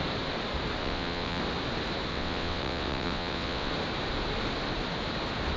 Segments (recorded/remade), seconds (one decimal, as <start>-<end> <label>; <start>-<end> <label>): 0.0-0.8 recorded; 0.8-1.4 remade; 1.4-2.1 recorded; 2.1-3.7 remade; 3.7-5.6 recorded